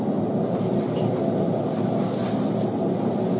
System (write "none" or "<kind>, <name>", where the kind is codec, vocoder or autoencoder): none